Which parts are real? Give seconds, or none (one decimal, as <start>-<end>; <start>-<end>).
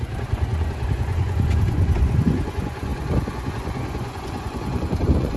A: none